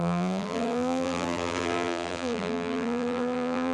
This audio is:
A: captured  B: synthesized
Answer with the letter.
B